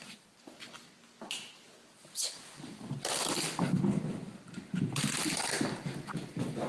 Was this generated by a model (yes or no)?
no